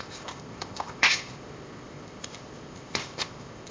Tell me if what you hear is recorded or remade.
remade